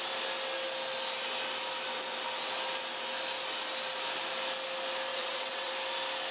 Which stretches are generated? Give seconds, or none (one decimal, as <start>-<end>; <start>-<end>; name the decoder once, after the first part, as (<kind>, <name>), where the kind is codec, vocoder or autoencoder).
5.1-5.7 (vocoder, WaveNeXt)